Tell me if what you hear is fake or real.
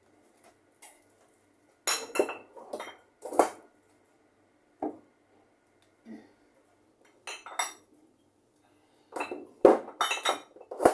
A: real